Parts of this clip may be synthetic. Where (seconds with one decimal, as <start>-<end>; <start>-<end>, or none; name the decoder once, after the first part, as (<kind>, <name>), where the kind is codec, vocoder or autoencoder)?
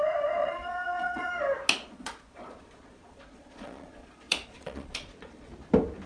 0.4-1.3 (vocoder, Vocos); 1.8-5.5